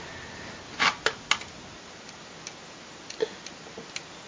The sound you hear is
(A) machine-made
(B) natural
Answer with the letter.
B